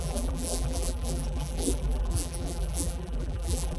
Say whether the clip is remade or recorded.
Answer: remade